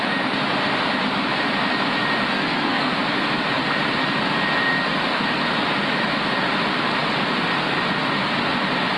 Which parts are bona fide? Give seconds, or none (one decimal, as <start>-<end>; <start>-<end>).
0.0-2.3; 2.9-9.0